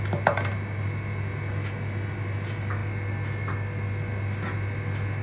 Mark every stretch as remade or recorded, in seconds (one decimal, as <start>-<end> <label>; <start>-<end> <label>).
0.0-5.2 recorded